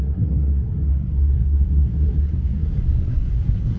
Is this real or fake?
fake